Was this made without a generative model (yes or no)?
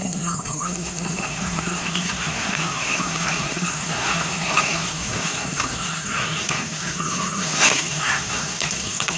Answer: no